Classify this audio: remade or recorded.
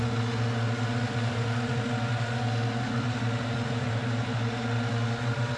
recorded